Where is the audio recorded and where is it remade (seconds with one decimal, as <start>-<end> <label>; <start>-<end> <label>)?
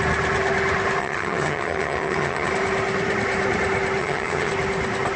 0.0-1.0 recorded; 1.0-2.5 remade; 2.5-4.0 recorded; 4.0-4.5 remade; 4.5-5.2 recorded